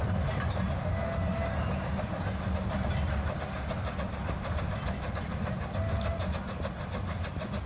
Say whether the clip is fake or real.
real